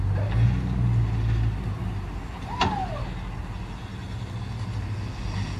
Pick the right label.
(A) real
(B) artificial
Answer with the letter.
A